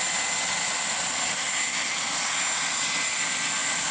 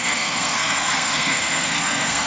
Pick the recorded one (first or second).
first